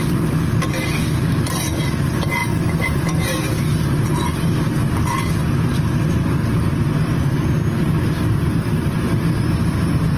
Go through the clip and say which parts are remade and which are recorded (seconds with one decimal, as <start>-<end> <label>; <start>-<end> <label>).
0.0-10.2 recorded